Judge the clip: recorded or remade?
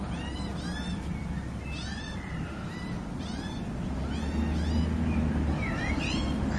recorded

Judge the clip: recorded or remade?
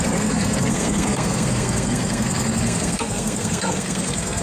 remade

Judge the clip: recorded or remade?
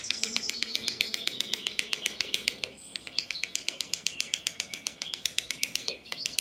remade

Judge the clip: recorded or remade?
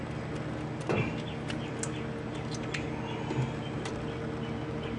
recorded